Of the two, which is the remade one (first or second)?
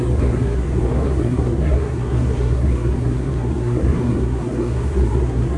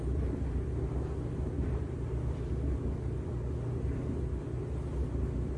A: first